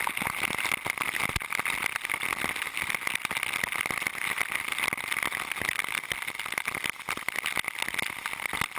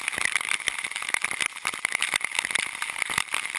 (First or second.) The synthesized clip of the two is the second